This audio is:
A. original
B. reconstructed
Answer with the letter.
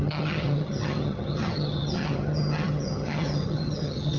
B